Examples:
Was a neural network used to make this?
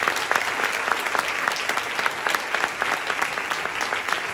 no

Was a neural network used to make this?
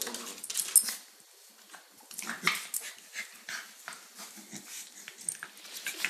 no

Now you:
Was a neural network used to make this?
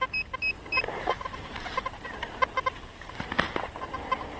no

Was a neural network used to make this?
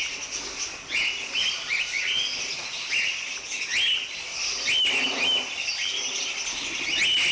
no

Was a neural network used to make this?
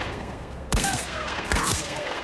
yes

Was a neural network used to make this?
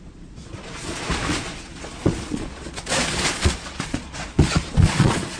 yes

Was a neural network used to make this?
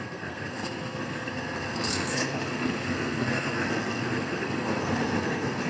yes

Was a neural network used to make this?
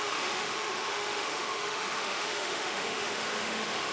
yes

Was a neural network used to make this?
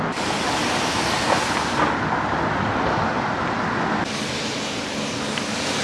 no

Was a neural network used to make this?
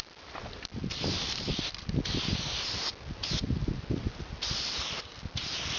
no